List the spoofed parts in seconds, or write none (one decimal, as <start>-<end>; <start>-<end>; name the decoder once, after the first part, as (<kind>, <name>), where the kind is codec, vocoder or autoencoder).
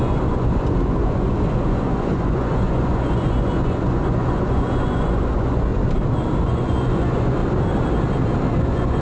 0.0-5.7 (vocoder, Vocos); 6.4-7.4; 8.6-9.0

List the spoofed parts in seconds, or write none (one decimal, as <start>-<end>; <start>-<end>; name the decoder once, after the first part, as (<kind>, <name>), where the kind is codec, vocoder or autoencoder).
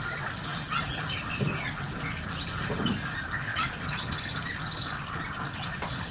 none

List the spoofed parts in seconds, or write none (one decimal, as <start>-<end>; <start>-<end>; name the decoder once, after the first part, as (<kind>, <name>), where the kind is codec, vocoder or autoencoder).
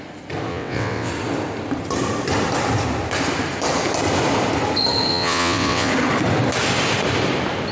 0.5-1.1 (vocoder, WaveNeXt); 5.1-5.9